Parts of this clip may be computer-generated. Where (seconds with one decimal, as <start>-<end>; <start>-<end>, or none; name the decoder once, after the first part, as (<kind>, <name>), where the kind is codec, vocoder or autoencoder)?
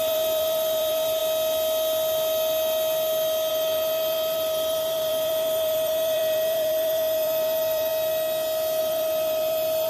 0.0-1.2 (vocoder, BigVGAN v2); 3.5-7.9; 8.8-9.9